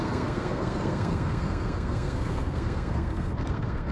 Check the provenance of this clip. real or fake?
fake